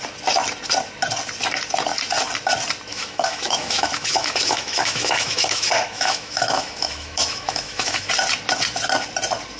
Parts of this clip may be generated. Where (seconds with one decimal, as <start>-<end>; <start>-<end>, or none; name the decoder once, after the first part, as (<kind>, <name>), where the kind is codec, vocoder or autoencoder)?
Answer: 2.9-8.1 (autoencoder, DAC-VAE)

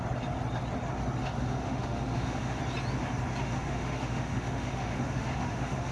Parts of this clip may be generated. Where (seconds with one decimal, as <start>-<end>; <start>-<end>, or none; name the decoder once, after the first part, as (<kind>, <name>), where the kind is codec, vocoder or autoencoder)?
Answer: 1.2-2.6 (autoencoder, DAC-VAE); 3.4-5.9

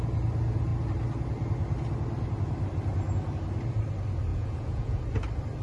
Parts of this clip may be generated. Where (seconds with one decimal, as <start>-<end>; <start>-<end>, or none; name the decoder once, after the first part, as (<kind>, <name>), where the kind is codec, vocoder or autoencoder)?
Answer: 4.3-5.0 (vocoder, Vocos)

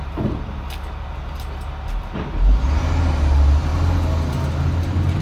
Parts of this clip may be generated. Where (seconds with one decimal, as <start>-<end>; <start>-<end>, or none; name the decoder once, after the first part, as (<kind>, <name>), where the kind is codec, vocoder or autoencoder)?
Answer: none

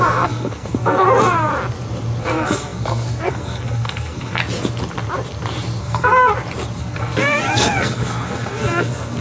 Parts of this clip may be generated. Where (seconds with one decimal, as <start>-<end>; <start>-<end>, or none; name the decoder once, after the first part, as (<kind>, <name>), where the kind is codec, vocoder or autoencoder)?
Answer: 0.0-1.5 (codec, SNAC); 2.2-4.4; 5.8-6.3; 6.8-9.2

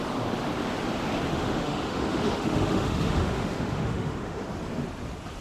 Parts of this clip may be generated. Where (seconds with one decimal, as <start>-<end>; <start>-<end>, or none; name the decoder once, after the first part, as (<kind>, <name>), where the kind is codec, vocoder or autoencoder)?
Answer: 1.3-4.4 (autoencoder, DAC-VAE)

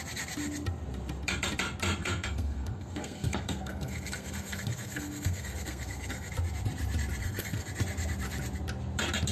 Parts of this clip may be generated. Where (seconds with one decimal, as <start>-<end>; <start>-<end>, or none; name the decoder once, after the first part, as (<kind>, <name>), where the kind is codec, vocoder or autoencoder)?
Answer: 2.0-6.3 (codec, SNAC); 7.2-7.7